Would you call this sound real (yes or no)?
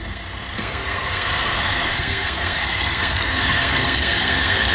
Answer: no